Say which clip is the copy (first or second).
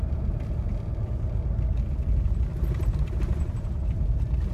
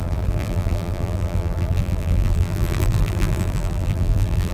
second